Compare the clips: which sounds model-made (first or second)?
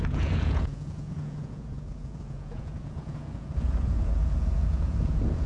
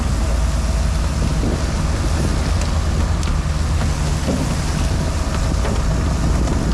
first